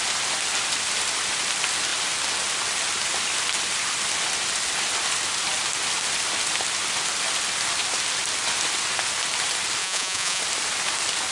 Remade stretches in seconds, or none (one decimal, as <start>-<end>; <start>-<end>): 9.8-10.4